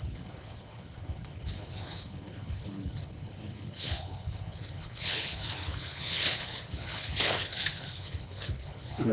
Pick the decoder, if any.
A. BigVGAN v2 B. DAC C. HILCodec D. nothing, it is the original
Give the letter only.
C